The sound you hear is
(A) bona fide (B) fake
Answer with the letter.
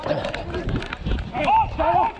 A